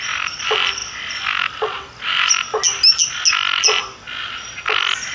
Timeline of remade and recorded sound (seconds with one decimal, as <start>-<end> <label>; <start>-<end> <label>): 0.0-5.1 recorded